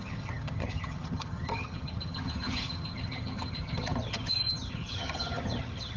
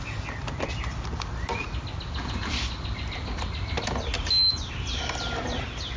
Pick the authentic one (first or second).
second